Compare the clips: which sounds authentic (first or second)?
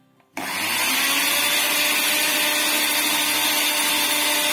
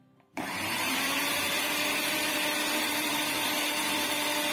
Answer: first